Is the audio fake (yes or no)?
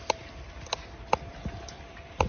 no